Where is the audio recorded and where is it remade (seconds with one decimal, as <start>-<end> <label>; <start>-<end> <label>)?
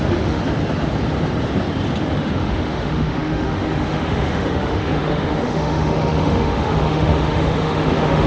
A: 0.0-0.4 remade; 0.4-2.1 recorded; 2.1-8.3 remade